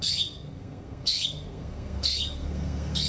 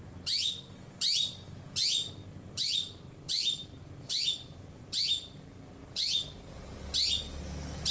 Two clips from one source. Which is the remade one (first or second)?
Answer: first